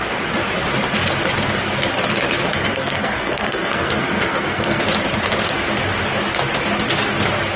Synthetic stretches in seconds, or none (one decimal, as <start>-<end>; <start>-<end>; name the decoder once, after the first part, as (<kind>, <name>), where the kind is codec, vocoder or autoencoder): 2.6-4.8 (codec, SNAC)